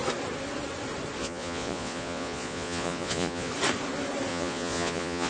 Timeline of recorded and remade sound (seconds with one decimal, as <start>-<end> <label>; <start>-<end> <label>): 0.0-1.2 recorded; 1.2-3.5 remade; 3.5-4.3 recorded; 4.3-5.3 remade